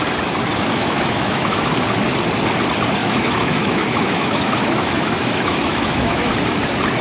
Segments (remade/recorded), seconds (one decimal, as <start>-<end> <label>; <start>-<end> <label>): 0.0-0.8 recorded; 0.8-1.7 remade; 1.7-3.0 recorded; 3.0-6.3 remade; 6.3-7.0 recorded